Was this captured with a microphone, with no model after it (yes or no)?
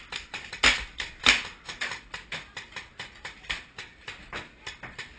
yes